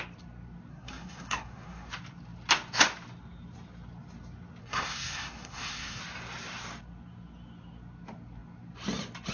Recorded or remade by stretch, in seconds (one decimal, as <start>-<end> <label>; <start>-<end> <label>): 0.0-0.7 recorded; 0.7-1.9 remade; 1.9-4.6 recorded; 4.6-6.0 remade; 6.0-9.3 recorded